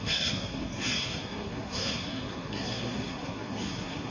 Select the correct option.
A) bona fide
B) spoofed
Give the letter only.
B